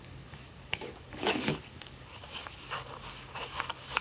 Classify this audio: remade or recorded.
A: remade